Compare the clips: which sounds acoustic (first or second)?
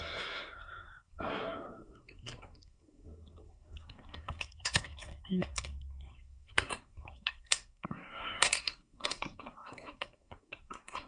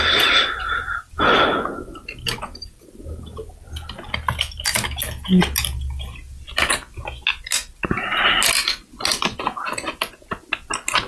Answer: second